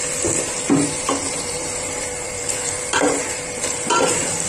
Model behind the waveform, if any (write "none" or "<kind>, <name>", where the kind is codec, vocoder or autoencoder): vocoder, BigVGAN v2